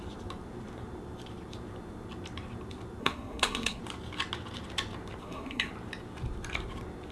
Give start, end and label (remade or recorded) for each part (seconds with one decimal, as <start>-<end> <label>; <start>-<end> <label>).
0.0-3.0 recorded; 3.0-3.8 remade; 3.8-5.2 recorded; 5.2-5.7 remade; 5.7-7.1 recorded

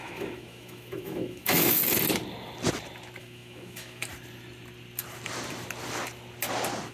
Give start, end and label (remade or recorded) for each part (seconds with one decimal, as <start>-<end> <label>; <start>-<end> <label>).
0.0-1.8 remade; 1.8-3.2 recorded; 3.2-4.0 remade; 4.0-6.9 recorded

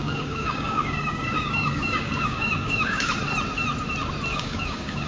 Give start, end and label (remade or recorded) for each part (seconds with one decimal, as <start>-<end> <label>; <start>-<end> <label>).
0.0-3.1 remade; 3.1-4.3 recorded; 4.3-5.1 remade

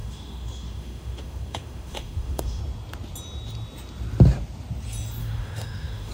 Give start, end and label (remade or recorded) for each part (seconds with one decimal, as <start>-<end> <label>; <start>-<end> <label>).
0.0-2.6 remade; 2.6-5.2 recorded; 5.2-6.1 remade

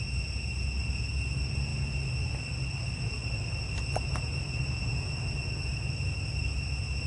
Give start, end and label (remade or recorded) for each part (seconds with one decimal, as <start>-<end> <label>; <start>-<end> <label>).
0.0-7.1 recorded